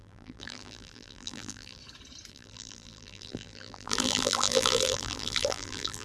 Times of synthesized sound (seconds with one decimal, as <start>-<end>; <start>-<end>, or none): 0.0-1.8; 2.3-6.0